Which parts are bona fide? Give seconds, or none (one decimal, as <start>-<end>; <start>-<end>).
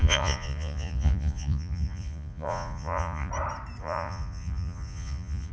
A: 3.3-3.8